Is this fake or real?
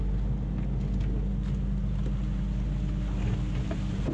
real